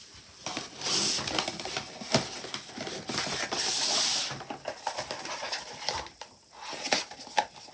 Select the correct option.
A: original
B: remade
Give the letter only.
A